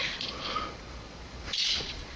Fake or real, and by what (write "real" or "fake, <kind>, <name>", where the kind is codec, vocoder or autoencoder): fake, vocoder, Vocos